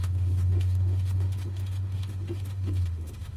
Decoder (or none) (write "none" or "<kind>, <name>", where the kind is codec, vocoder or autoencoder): autoencoder, DAC-VAE